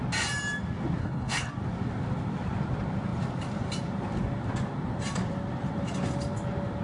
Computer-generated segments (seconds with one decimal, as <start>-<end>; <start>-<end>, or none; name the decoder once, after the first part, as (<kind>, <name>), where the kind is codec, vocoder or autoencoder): 1.0-1.5 (codec, HILCodec)